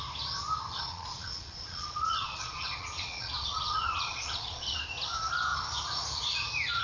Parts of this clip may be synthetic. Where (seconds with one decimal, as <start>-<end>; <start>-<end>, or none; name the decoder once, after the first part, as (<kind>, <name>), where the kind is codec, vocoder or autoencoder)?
0.7-4.8 (vocoder, Vocos)